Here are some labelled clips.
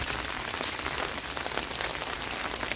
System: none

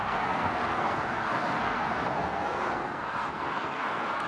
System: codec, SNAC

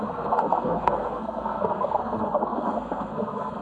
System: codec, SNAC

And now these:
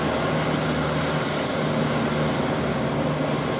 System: none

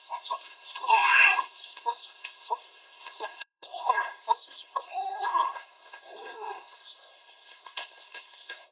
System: codec, SNAC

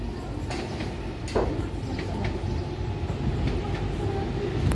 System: none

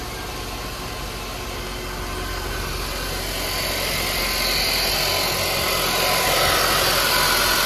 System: none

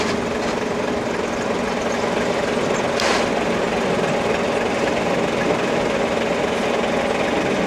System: none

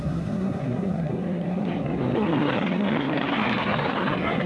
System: codec, SNAC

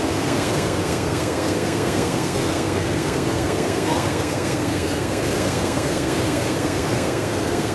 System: codec, SNAC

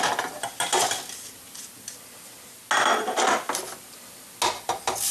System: none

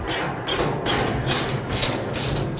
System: none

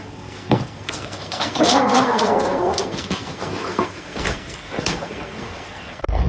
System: codec, SNAC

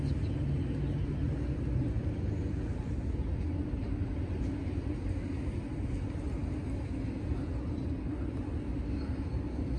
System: none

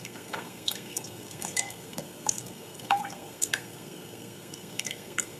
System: codec, SNAC